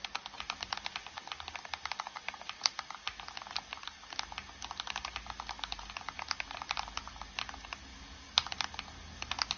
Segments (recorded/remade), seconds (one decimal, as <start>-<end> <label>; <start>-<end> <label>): 0.0-9.6 recorded